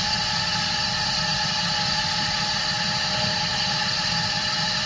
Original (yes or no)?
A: yes